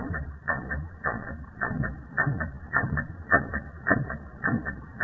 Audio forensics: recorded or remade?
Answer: remade